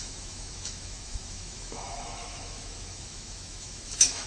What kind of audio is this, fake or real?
fake